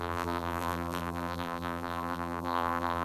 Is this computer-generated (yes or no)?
yes